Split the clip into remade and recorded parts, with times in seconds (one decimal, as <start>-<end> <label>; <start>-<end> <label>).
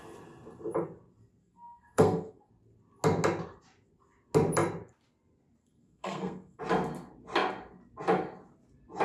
0.0-1.4 recorded; 1.4-2.5 remade; 2.5-5.6 recorded; 5.6-6.6 remade; 6.6-9.0 recorded